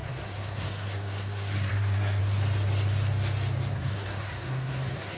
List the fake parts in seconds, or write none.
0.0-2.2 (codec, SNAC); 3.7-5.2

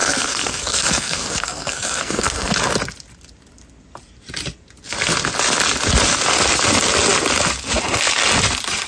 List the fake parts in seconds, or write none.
0.0-2.5 (codec, SNAC)

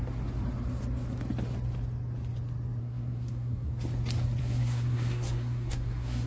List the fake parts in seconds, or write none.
2.8-3.7 (codec, SNAC); 4.4-6.3

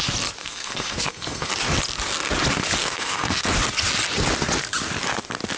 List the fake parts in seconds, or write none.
0.4-1.5 (codec, SNAC); 2.8-3.4

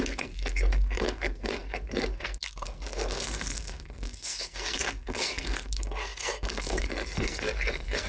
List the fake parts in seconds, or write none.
0.0-8.1 (codec, SNAC)

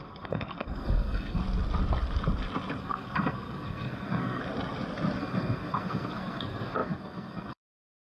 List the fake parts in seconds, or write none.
0.0-1.4 (codec, SNAC); 2.8-4.4; 5.2-8.1

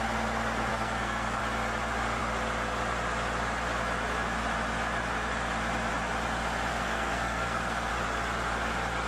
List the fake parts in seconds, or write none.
0.7-1.4 (codec, SNAC); 6.7-7.9

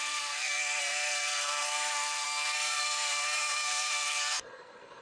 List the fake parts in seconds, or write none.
0.0-5.0 (codec, SNAC)